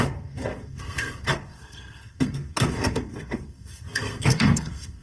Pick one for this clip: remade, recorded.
remade